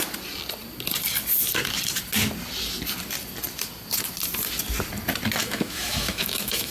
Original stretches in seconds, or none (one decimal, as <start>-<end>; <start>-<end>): 0.0-5.4